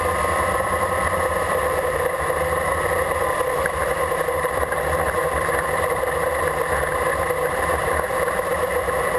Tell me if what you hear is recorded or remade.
remade